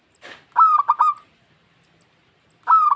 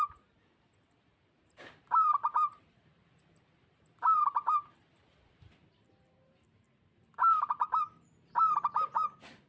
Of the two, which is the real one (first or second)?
first